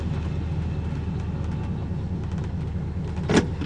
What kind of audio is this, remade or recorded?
recorded